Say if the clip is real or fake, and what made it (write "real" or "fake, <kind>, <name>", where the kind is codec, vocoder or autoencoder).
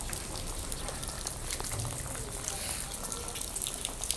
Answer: real